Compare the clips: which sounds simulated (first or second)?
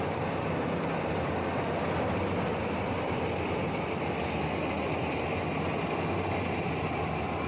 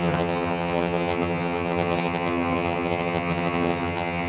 second